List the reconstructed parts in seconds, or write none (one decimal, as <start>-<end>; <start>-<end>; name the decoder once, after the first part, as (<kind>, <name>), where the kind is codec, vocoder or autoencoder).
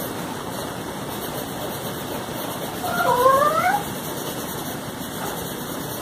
3.3-4.0 (vocoder, BigVGAN v2)